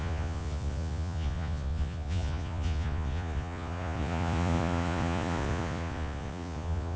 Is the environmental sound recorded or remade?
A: remade